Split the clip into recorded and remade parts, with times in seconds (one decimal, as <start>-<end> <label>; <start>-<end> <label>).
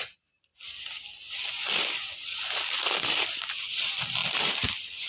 0.0-0.5 remade; 0.5-3.6 recorded; 3.6-5.1 remade